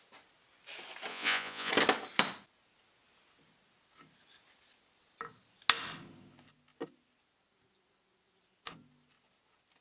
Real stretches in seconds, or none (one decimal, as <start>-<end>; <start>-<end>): 0.0-1.1; 1.7-9.8

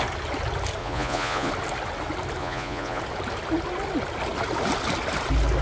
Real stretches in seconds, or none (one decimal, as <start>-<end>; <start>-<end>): 0.0-0.8; 1.5-2.4; 3.0-5.6